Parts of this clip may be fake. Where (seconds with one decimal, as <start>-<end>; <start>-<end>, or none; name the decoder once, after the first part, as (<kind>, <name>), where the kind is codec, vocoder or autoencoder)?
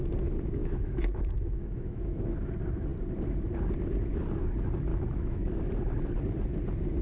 0.6-2.2 (autoencoder, DAC-VAE); 4.9-5.6